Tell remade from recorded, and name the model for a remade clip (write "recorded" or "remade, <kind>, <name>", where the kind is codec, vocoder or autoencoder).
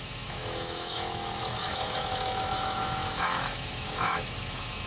remade, autoencoder, DAC-VAE